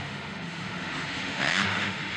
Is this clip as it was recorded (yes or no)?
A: no